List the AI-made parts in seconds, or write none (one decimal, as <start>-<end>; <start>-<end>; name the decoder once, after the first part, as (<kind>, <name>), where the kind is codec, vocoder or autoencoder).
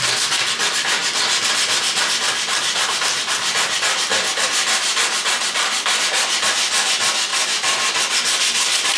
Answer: none